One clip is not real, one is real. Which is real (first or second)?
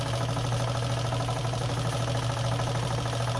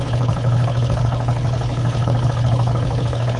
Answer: first